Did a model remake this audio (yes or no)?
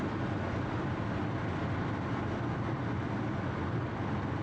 no